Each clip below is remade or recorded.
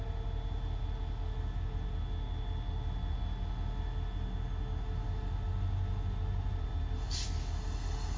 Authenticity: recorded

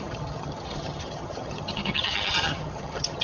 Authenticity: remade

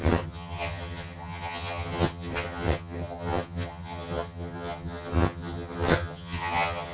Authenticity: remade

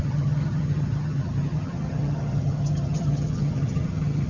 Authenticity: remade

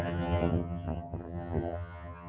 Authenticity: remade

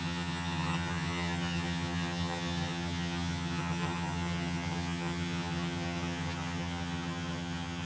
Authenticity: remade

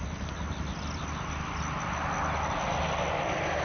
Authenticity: recorded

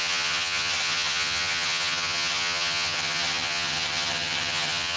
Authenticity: remade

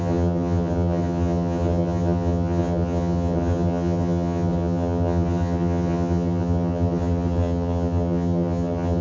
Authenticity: remade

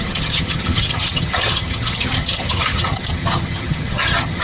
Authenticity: remade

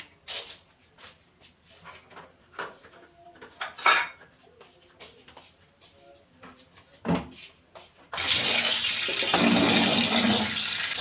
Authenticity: recorded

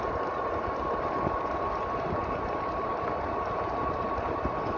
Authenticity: recorded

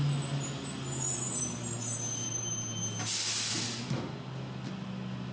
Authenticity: recorded